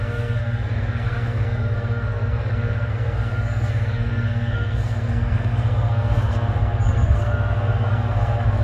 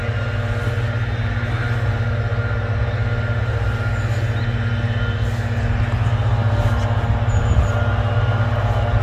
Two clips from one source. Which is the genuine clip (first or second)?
second